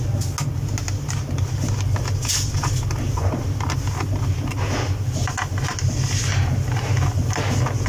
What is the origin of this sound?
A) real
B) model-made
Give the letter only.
A